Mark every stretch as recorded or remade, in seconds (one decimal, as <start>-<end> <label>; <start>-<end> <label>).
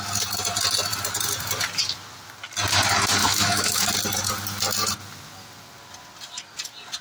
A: 0.0-3.2 recorded; 3.2-3.9 remade; 3.9-7.0 recorded